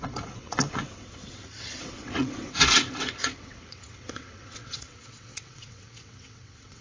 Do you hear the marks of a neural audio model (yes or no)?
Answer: yes